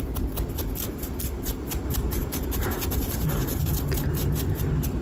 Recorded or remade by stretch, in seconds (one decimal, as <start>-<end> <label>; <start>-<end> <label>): 0.0-0.8 recorded; 0.8-3.7 remade; 3.7-5.0 recorded